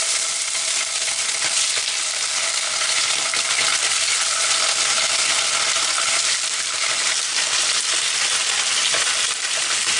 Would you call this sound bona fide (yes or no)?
yes